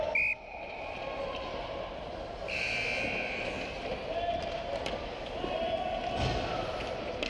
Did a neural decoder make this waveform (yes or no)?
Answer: no